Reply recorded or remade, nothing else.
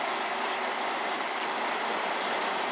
recorded